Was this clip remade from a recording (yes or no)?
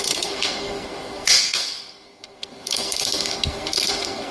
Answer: yes